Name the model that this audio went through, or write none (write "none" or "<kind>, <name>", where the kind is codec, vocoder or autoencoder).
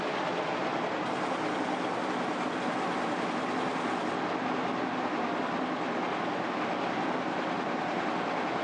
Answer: none